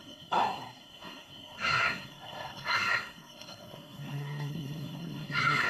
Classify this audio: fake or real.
fake